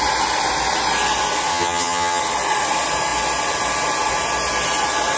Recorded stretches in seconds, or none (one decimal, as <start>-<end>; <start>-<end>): 0.0-1.5; 2.2-5.2